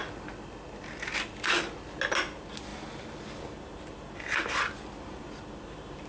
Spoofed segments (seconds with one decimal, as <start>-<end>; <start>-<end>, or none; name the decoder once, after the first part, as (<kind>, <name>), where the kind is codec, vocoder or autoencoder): none